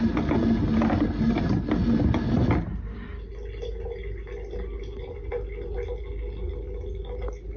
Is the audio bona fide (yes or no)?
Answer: yes